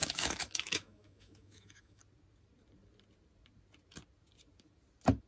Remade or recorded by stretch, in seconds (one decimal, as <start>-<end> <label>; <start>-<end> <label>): 0.0-2.0 remade; 2.0-5.3 recorded

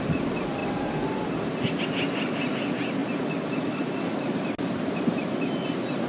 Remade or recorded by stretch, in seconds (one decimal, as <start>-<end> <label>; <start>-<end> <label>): 0.0-6.1 recorded

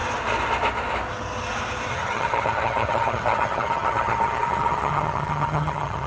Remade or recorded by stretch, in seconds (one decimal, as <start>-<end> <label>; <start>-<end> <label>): 0.0-1.9 recorded; 1.9-6.1 remade

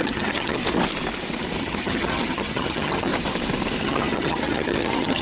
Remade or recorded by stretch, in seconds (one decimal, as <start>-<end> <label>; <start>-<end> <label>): 0.0-0.6 remade; 0.6-1.6 recorded; 1.6-3.1 remade; 3.1-3.8 recorded; 3.8-5.2 remade

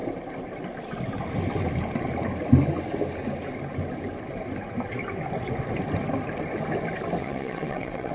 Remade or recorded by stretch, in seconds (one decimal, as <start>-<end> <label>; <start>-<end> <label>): 0.0-7.2 recorded; 7.2-8.1 remade